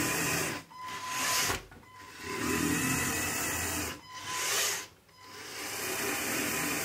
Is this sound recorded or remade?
remade